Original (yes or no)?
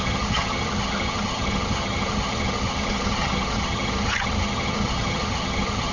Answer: no